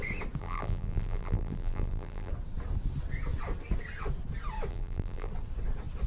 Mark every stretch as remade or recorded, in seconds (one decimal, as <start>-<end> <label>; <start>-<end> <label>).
0.0-0.4 recorded; 0.4-2.3 remade; 2.3-4.7 recorded; 4.7-5.3 remade; 5.3-6.1 recorded